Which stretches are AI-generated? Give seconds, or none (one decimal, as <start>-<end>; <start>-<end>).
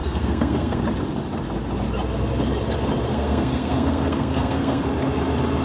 0.0-0.8; 3.1-4.8